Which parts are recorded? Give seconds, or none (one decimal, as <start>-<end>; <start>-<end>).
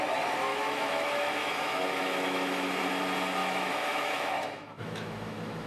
0.0-0.5; 2.8-3.4